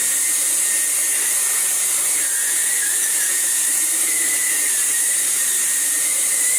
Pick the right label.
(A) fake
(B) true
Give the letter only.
A